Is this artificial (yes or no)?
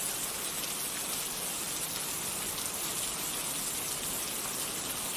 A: no